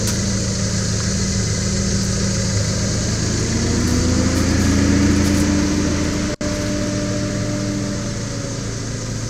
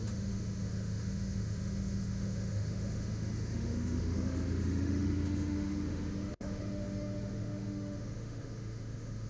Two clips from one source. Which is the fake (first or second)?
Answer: second